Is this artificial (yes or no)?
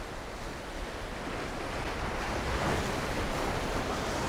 no